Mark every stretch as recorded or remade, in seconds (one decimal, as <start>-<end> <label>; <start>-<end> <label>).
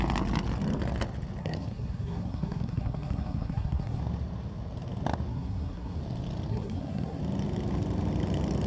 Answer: 0.0-1.4 recorded; 1.4-4.0 remade; 4.0-5.3 recorded; 5.3-6.0 remade; 6.0-6.5 recorded; 6.5-7.2 remade; 7.2-8.7 recorded